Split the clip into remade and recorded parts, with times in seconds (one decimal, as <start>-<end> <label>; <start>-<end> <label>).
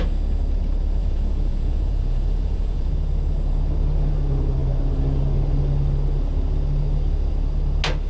0.0-1.0 recorded; 1.0-2.9 remade; 2.9-8.1 recorded